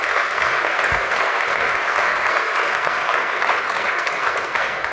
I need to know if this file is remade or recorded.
remade